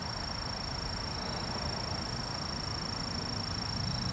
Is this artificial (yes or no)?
no